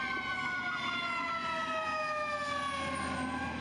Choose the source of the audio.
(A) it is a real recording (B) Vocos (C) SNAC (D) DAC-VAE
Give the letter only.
A